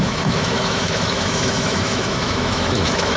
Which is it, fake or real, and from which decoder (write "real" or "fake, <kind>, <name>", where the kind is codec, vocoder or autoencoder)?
fake, autoencoder, DAC-VAE